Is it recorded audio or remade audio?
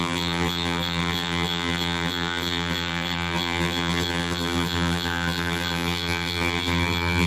remade